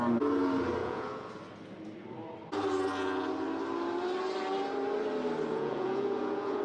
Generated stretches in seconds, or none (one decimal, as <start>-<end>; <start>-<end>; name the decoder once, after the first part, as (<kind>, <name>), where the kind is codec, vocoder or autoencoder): 0.8-1.3 (vocoder, Vocos); 5.5-6.6